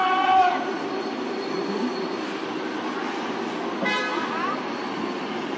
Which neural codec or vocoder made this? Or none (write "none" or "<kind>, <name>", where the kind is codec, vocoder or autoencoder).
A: none